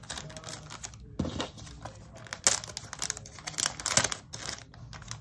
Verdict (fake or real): real